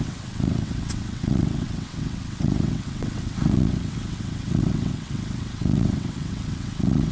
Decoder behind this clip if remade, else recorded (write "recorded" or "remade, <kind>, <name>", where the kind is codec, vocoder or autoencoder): remade, vocoder, WaveNeXt